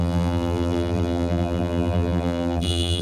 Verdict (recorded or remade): remade